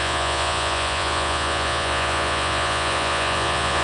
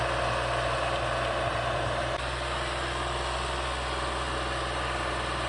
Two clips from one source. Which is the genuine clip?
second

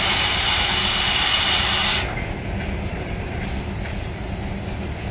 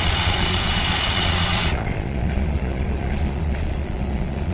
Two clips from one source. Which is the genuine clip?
first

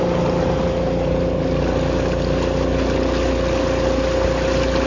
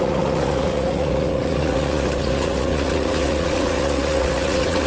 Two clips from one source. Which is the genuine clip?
first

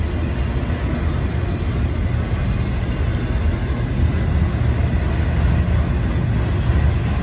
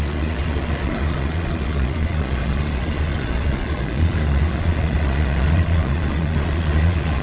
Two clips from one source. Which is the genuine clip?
first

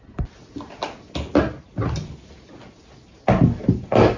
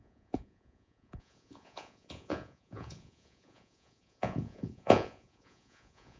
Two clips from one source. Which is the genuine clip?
first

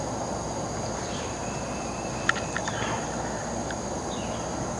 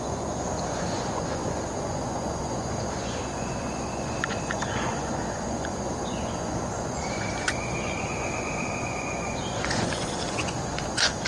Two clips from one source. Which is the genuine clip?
first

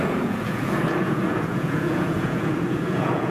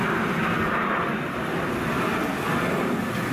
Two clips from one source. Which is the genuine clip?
second